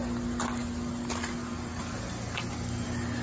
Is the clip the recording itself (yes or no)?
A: yes